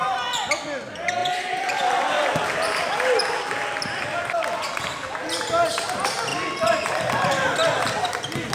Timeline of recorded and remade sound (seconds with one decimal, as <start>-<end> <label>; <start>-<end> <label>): 0.0-1.2 recorded; 1.2-5.4 remade; 5.4-6.3 recorded; 6.3-7.3 remade; 7.3-8.5 recorded

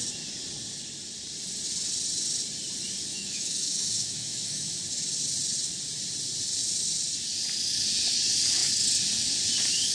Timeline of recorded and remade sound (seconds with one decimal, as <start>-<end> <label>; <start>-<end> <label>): 0.0-3.1 recorded; 3.1-4.8 remade; 4.8-9.9 recorded

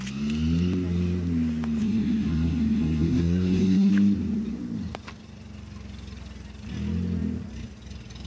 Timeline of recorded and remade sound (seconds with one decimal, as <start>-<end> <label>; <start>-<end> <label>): 0.0-1.8 recorded; 1.8-3.9 remade; 3.9-8.3 recorded